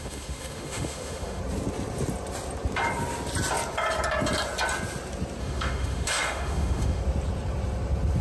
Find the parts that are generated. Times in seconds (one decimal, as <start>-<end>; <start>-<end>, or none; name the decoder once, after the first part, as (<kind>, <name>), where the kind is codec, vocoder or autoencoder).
0.0-1.4 (autoencoder, DAC-VAE); 5.4-7.0